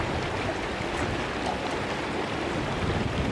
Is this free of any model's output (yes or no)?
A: yes